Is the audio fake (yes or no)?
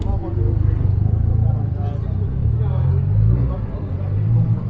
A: no